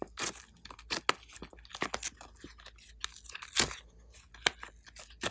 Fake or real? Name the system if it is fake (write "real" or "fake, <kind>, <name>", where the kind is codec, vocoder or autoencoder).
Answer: real